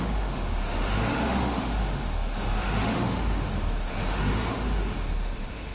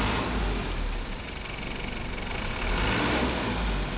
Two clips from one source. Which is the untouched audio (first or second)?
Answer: second